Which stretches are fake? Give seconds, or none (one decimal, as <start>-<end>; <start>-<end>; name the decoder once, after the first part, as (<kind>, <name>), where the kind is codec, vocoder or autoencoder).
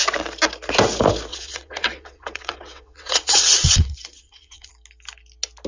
1.3-4.7 (vocoder, WaveNeXt)